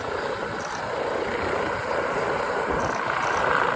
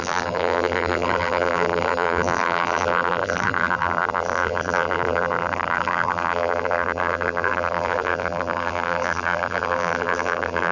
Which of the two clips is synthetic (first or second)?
second